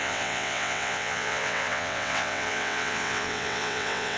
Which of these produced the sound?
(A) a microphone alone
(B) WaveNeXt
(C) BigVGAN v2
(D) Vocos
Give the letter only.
B